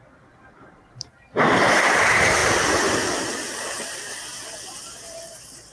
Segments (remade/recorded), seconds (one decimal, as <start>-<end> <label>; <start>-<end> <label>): 0.0-2.4 remade; 2.4-5.3 recorded; 5.3-5.7 remade